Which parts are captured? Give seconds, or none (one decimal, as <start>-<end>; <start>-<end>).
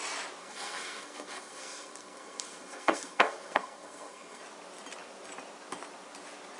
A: 0.0-0.4; 4.4-6.6